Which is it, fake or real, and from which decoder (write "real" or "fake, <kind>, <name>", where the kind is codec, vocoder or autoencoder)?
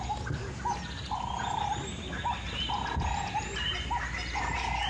real